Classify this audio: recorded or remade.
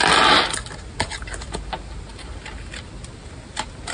recorded